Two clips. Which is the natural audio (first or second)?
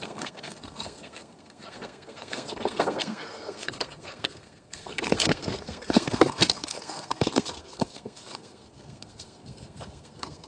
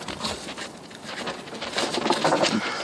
second